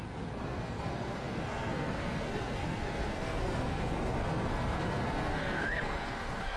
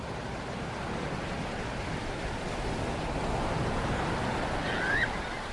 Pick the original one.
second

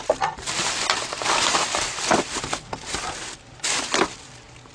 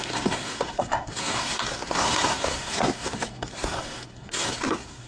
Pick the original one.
first